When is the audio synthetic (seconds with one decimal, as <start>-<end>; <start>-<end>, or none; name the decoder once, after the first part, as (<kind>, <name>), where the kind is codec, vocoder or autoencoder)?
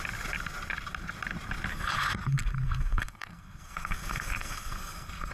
1.7-5.3 (codec, SNAC)